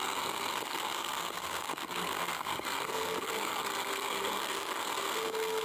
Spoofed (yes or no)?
yes